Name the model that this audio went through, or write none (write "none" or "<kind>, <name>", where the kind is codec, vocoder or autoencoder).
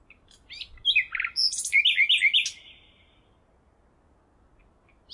none